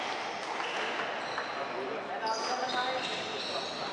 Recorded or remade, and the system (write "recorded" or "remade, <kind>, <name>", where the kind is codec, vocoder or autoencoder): recorded